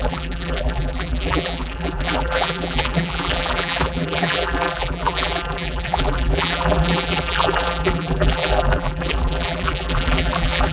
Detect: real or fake fake